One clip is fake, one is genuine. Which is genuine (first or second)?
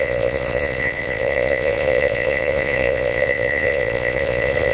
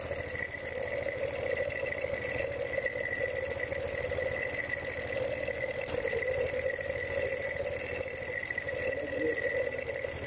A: second